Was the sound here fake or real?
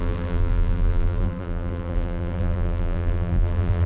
fake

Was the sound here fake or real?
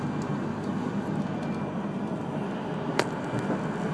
real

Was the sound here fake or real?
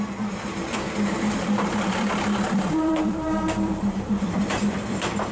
fake